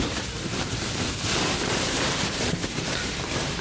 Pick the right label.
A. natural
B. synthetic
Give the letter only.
B